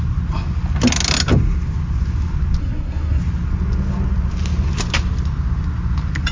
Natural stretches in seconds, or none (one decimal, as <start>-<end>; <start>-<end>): 0.0-2.6; 3.2-6.3

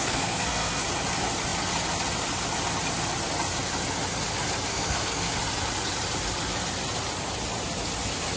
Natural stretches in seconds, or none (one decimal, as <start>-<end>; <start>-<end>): 0.8-4.7; 5.3-8.4

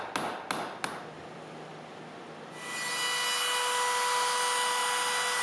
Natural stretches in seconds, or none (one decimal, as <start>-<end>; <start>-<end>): 0.0-5.4

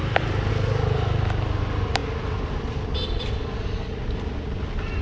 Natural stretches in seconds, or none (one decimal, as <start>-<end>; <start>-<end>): 0.0-5.0

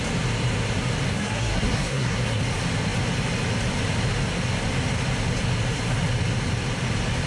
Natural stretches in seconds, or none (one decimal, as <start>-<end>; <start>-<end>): 0.0-1.1; 2.4-7.3

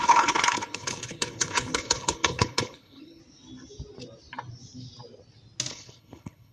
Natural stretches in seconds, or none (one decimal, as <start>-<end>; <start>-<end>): 3.2-5.7

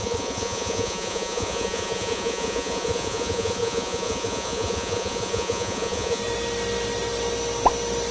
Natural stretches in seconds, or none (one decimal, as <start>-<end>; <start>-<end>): 6.2-8.1

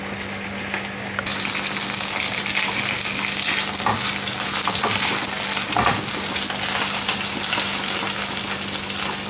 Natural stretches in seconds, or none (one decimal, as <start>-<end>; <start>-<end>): 0.0-9.3